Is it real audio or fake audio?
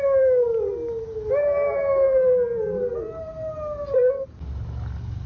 real